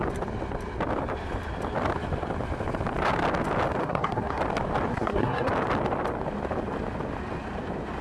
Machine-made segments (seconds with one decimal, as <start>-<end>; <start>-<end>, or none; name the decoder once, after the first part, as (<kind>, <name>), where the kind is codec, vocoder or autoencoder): 3.8-4.4 (codec, SNAC); 4.9-5.5